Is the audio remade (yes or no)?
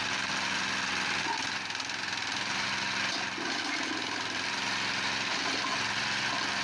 no